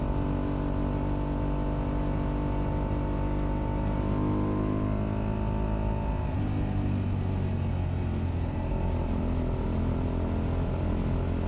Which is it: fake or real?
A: real